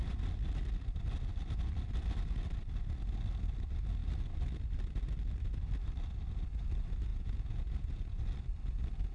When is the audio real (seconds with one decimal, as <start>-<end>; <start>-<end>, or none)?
0.0-7.1; 8.2-9.1